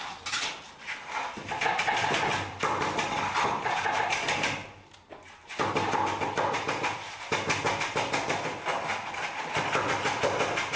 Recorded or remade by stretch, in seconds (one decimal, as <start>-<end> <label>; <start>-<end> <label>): 0.0-2.3 recorded; 2.3-4.9 remade; 4.9-10.8 recorded